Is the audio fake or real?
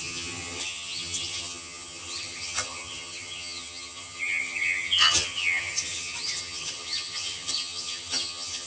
fake